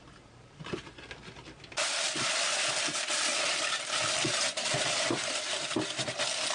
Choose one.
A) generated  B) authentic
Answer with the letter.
A